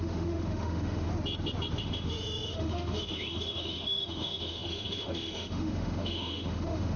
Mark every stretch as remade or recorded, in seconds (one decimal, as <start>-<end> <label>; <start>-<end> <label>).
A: 0.0-1.1 remade; 1.1-1.8 recorded; 1.8-7.0 remade